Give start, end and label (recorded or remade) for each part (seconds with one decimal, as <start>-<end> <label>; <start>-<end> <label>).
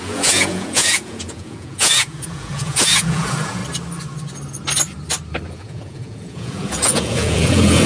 0.0-3.6 remade; 3.6-5.5 recorded; 5.5-7.9 remade